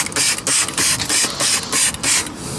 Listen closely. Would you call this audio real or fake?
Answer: real